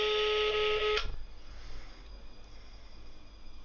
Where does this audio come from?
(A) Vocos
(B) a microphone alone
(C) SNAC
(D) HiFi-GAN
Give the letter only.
B